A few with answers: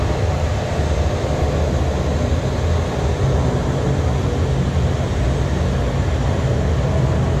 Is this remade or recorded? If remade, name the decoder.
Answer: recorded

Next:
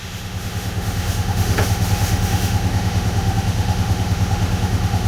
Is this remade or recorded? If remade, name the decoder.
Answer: remade, autoencoder, DAC-VAE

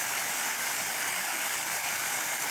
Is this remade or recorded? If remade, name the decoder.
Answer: remade, codec, DAC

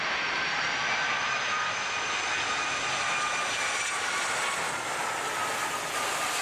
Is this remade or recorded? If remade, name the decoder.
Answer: recorded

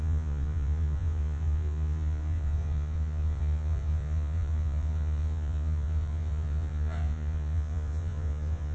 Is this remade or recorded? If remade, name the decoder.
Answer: remade, vocoder, Vocos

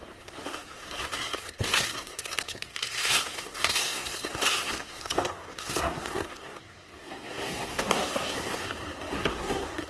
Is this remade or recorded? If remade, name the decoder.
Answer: remade, codec, SNAC